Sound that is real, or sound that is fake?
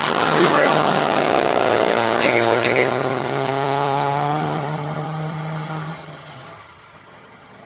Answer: fake